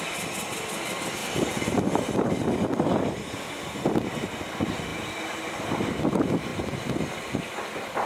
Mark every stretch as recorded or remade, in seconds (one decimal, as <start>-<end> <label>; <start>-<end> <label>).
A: 0.0-1.2 remade; 1.2-3.5 recorded; 3.5-8.1 remade